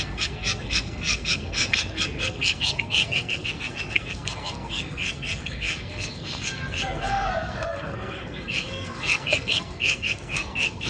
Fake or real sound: fake